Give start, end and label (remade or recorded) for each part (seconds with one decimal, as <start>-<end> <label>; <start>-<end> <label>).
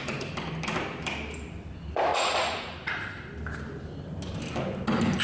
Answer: 0.0-2.1 recorded; 2.1-2.9 remade; 2.9-5.2 recorded